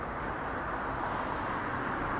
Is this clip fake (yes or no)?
no